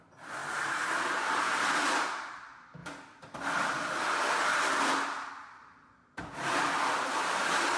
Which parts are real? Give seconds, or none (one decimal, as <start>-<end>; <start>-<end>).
0.0-7.8